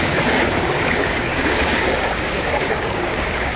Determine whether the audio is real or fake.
fake